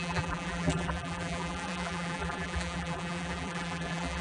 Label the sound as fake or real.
fake